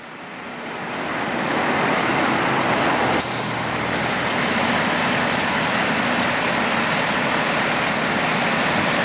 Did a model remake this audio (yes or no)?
no